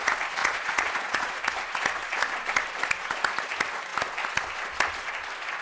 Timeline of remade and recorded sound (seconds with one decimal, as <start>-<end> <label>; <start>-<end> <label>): 0.0-0.4 recorded; 0.4-1.3 remade; 1.3-5.6 recorded